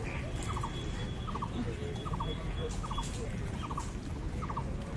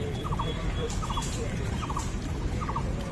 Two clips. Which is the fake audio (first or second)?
second